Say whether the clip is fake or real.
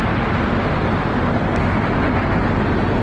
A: real